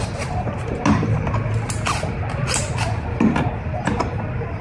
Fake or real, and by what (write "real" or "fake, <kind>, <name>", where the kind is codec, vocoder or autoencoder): real